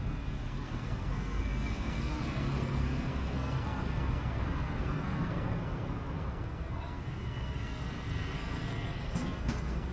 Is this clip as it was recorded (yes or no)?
no